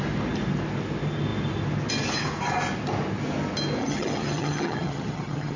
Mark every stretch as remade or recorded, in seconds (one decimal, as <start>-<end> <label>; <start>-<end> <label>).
0.0-3.8 recorded; 3.8-5.6 remade